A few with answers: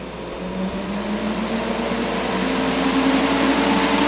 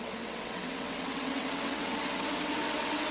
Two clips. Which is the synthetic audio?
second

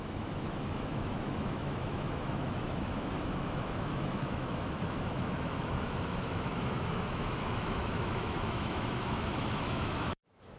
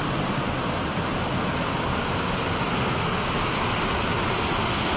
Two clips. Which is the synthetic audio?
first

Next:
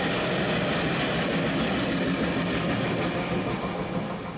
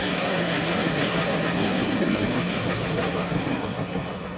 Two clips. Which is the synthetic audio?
second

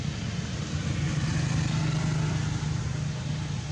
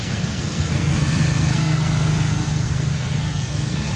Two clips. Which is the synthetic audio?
second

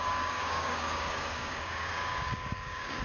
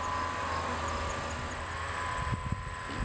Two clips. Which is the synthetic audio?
first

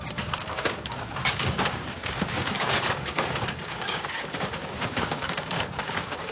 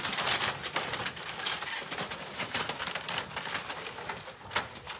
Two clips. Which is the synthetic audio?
first